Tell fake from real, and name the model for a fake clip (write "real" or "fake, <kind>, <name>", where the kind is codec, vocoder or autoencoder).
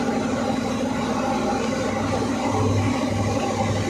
real